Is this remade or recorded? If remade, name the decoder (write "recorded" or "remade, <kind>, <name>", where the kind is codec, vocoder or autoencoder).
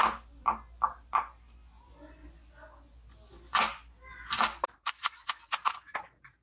recorded